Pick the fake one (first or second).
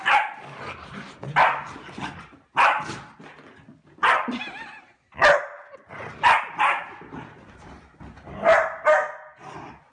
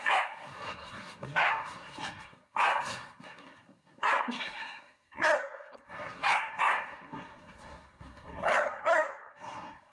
second